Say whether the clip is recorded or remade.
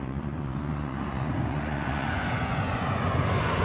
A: remade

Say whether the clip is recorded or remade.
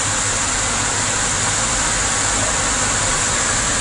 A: recorded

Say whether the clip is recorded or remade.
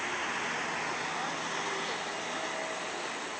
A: recorded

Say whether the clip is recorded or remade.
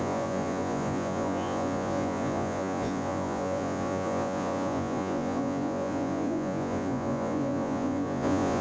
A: remade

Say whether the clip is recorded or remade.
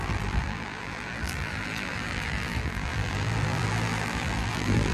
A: remade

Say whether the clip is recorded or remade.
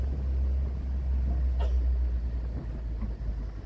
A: recorded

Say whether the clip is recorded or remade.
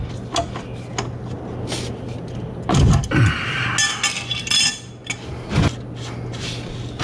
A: recorded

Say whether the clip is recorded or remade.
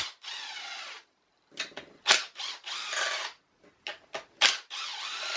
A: recorded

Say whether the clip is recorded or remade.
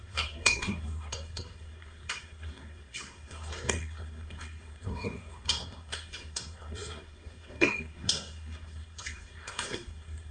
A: remade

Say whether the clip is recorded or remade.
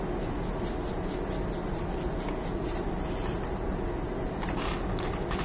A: recorded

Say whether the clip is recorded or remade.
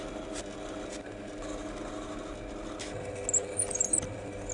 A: recorded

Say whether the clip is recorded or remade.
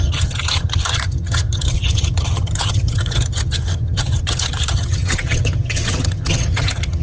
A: remade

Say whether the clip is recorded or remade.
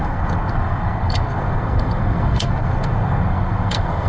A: remade